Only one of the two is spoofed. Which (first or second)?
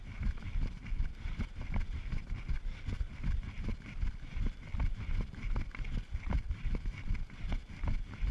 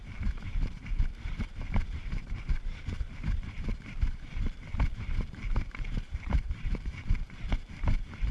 second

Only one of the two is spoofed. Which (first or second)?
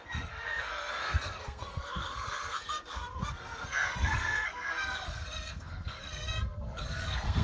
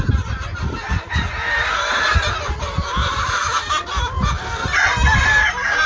first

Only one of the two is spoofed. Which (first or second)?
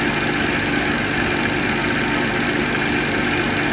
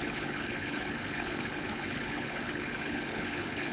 second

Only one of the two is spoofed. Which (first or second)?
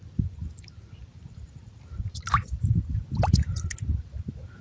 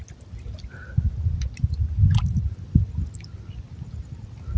first